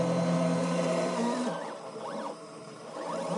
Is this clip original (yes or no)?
no